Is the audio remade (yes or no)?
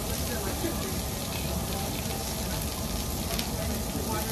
no